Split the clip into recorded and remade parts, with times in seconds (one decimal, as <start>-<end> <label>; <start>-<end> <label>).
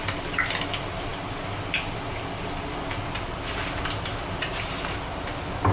0.0-5.7 recorded